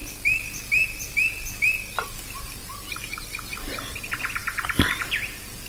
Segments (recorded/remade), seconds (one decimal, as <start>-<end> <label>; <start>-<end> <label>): 0.0-2.6 recorded; 2.6-3.5 remade; 3.5-4.4 recorded; 4.4-5.0 remade; 5.0-5.7 recorded